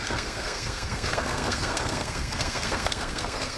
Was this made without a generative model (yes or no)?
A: no